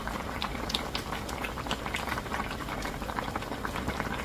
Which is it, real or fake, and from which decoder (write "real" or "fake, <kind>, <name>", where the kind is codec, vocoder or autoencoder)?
real